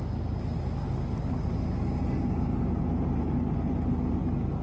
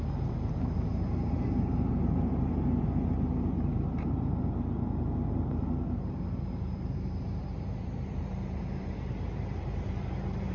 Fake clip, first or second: second